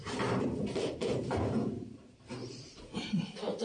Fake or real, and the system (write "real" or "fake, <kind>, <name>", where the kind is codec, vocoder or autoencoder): fake, vocoder, BigVGAN v2